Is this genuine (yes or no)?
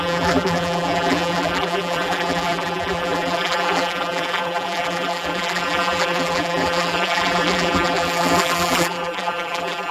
no